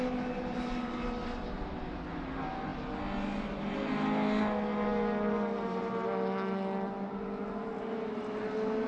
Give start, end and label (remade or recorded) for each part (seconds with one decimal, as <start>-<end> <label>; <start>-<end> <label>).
0.0-8.9 recorded